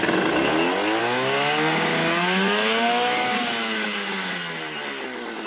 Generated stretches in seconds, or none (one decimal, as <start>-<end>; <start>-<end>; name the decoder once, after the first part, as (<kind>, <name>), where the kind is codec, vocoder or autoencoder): 1.0-4.3 (codec, DAC)